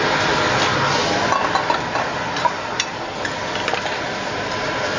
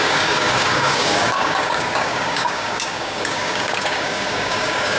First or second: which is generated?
second